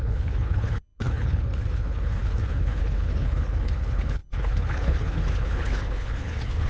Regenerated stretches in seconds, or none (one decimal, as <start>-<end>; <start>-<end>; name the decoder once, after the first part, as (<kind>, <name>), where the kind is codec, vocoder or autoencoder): 0.0-6.7 (codec, HILCodec)